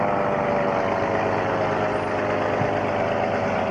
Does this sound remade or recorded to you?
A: recorded